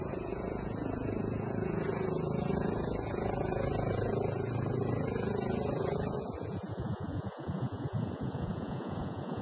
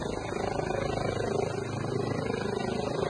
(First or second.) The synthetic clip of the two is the first